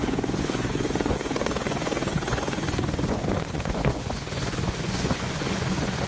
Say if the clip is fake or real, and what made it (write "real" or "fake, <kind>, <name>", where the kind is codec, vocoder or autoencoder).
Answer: fake, vocoder, Vocos